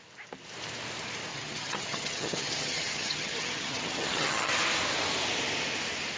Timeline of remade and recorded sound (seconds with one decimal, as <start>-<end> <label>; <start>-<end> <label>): 0.0-1.3 recorded; 1.3-4.5 remade; 4.5-6.2 recorded

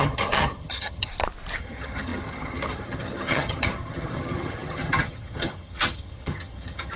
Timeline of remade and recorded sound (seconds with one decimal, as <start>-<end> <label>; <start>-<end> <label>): 0.0-1.1 remade; 1.1-1.6 recorded; 1.6-7.0 remade

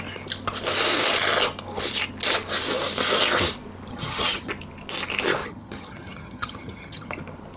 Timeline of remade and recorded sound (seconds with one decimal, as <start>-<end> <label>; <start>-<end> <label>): 0.0-3.9 recorded; 3.9-4.5 remade; 4.5-5.4 recorded; 5.4-7.1 remade; 7.1-7.6 recorded

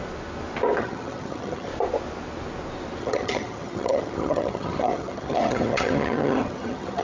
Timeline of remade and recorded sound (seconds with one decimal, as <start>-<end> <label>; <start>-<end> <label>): 0.0-0.8 recorded; 0.8-1.7 remade; 1.7-3.0 recorded; 3.0-7.0 remade